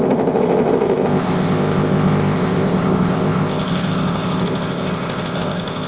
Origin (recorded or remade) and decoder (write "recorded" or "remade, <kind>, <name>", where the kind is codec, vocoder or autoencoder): remade, codec, ZipCodec